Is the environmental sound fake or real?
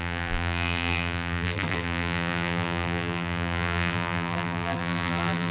fake